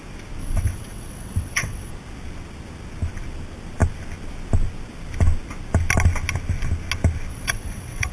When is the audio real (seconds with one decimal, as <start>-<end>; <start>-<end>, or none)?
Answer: 0.0-0.4; 1.9-7.3